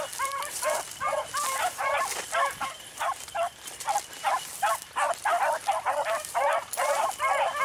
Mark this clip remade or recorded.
remade